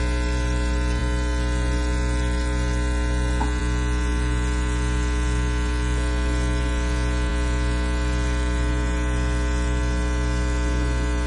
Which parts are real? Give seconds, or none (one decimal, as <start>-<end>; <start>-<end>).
0.0-11.3